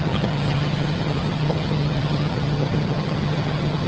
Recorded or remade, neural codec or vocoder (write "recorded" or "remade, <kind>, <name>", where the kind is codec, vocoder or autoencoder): remade, vocoder, HiFi-GAN